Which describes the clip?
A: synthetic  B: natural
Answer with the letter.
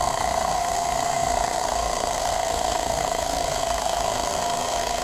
A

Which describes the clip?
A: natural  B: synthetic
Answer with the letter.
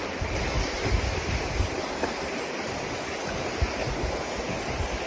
A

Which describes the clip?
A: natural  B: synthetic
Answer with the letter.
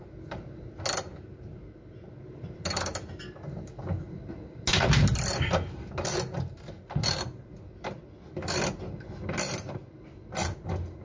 A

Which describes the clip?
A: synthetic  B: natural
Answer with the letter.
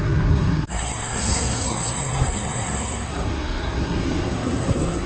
A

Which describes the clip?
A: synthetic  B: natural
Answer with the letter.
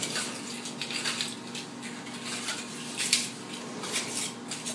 B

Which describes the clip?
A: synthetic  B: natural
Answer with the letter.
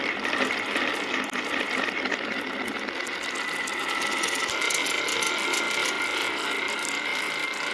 B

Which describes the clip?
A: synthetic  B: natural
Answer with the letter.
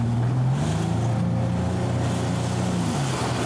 B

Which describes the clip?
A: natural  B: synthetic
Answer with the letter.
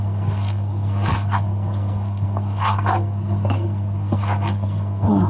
B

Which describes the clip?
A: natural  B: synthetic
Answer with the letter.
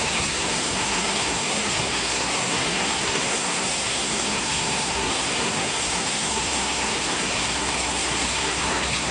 B